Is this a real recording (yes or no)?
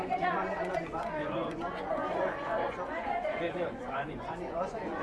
no